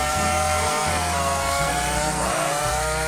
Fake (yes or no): yes